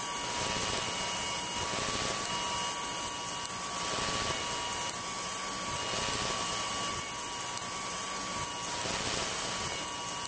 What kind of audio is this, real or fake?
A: real